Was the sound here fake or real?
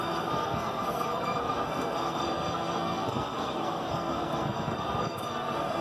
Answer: fake